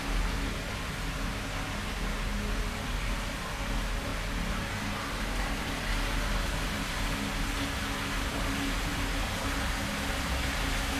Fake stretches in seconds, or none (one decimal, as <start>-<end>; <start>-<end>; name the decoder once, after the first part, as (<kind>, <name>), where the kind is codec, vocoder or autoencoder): none